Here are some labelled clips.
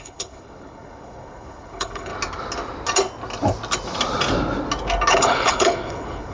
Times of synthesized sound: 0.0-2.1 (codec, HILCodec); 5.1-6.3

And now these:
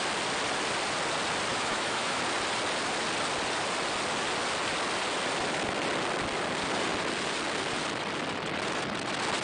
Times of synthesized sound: 1.5-2.2 (autoencoder, DAC-VAE)

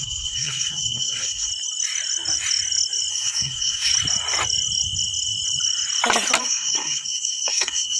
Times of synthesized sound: 0.0-1.5 (codec, SNAC); 3.1-3.9; 6.4-8.0

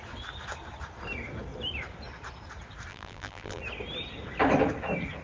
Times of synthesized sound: 2.9-3.6 (vocoder, BigVGAN v2)

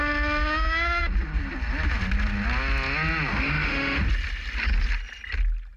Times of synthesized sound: 3.3-4.0 (autoencoder, DAC-VAE)